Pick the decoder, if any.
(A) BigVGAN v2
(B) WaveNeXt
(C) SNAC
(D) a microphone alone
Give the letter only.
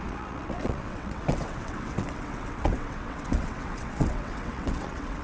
B